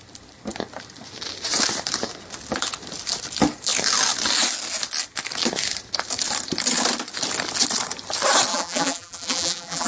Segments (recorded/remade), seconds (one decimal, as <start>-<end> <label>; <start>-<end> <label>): 0.0-8.5 recorded; 8.5-9.9 remade